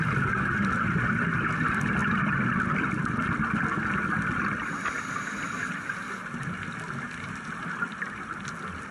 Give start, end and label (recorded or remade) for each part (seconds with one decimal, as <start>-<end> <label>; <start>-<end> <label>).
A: 0.0-8.9 recorded